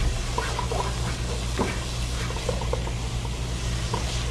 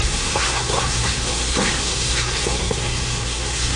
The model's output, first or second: second